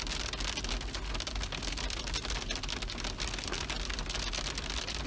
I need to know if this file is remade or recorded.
recorded